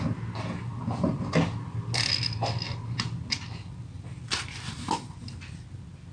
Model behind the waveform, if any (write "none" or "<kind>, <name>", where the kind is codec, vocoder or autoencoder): none